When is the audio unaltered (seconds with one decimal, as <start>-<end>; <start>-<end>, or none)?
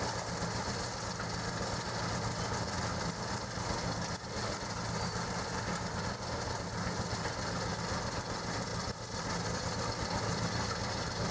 0.0-11.3